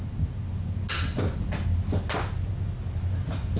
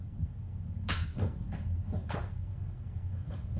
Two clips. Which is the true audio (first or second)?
first